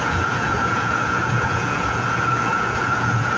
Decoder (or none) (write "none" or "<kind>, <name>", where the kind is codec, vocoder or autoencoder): vocoder, Vocos